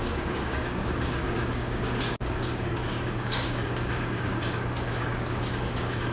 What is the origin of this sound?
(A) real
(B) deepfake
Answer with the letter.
B